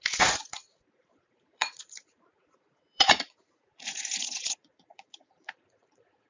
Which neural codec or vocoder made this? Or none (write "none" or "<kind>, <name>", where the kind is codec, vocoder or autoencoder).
vocoder, Vocos